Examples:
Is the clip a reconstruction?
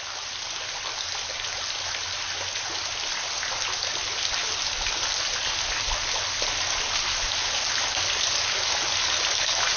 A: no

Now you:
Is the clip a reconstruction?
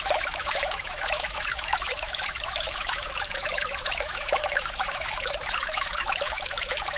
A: yes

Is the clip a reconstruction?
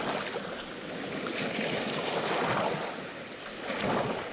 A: no